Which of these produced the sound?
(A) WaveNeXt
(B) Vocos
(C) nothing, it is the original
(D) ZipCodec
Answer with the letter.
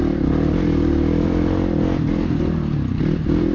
C